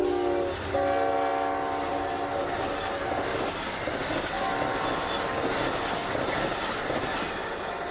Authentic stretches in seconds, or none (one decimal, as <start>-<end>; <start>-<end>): 0.0-7.9